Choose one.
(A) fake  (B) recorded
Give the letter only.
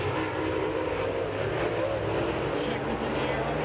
B